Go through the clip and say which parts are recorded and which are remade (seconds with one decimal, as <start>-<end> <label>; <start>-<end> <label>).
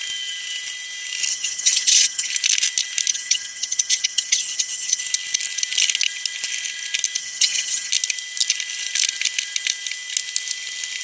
0.0-1.3 recorded; 1.3-2.3 remade; 2.3-3.1 recorded; 3.1-5.0 remade; 5.0-7.2 recorded; 7.2-7.9 remade; 7.9-11.0 recorded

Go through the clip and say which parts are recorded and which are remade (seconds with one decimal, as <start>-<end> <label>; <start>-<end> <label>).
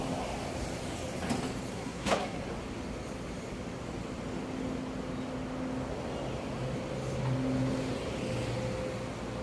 0.0-1.7 recorded; 1.7-2.4 remade; 2.4-9.4 recorded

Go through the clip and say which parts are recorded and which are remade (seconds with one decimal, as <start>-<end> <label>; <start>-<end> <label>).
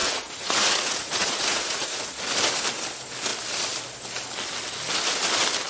0.0-2.2 remade; 2.2-5.7 recorded